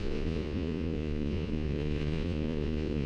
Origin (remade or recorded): remade